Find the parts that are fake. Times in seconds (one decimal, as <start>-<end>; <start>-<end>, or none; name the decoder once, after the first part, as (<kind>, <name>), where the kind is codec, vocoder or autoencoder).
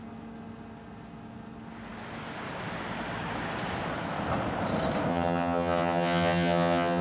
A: 5.1-7.0 (vocoder, HiFi-GAN)